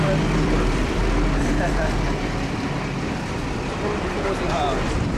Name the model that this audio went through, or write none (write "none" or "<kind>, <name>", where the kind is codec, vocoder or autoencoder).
vocoder, BigVGAN v2